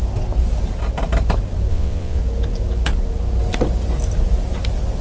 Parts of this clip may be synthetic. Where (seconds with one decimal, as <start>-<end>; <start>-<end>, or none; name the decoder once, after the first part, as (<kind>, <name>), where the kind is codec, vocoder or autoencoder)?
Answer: 1.7-2.2 (vocoder, WaveNeXt)